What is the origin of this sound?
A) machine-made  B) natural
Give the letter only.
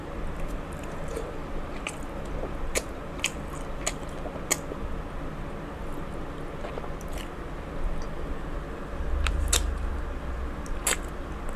B